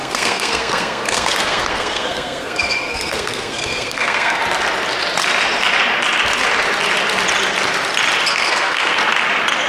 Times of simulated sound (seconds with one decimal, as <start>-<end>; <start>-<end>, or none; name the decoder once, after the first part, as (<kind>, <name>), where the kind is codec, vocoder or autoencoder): 0.0-4.4 (codec, SNAC); 8.3-9.0